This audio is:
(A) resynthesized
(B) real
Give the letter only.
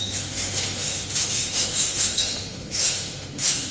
A